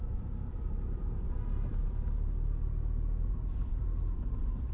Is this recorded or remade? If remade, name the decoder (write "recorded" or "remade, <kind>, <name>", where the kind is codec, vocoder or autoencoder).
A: remade, vocoder, BigVGAN v2